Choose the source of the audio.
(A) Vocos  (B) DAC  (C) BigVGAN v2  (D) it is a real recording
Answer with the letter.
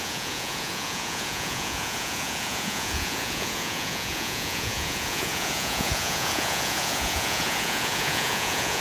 A